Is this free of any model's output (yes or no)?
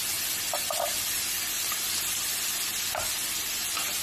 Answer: yes